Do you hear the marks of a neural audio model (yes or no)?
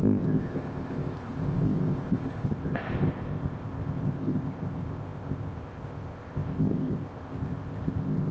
yes